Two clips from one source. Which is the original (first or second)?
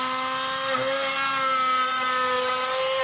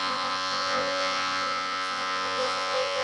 first